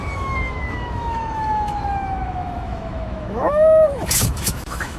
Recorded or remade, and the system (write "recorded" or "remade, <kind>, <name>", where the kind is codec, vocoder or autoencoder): remade, autoencoder, DAC-VAE